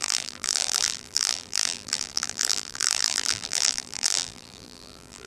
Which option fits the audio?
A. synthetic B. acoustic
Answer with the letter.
A